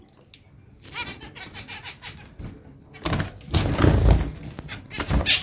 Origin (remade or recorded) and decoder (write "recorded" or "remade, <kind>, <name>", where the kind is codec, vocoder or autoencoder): recorded